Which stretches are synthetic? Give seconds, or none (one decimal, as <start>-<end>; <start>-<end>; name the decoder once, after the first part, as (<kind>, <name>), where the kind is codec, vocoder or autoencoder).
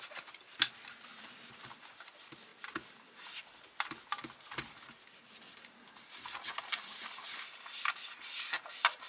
none